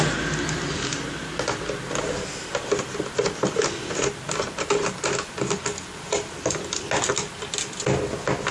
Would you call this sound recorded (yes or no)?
yes